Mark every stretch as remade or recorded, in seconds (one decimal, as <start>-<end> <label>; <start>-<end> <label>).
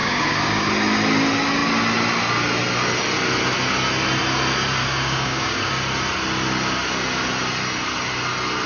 0.0-0.7 remade; 0.7-4.8 recorded; 4.8-5.7 remade; 5.7-8.7 recorded